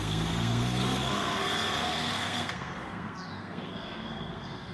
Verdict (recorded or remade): remade